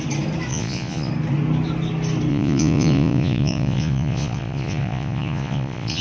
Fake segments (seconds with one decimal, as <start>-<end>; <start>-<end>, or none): 0.5-1.1; 2.3-6.0